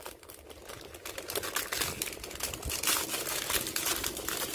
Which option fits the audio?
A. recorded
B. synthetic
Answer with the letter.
A